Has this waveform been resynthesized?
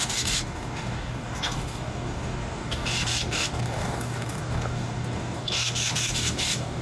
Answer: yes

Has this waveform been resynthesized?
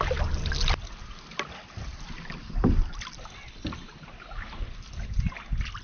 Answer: no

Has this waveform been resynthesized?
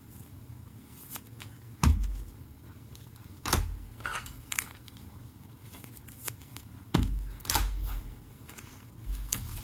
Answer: yes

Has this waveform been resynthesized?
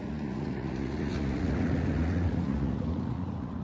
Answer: yes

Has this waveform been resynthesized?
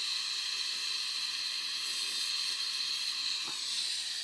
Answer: no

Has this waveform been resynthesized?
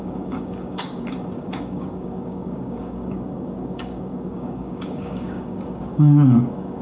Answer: yes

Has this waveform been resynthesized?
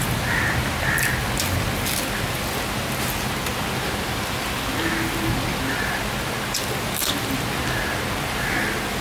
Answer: no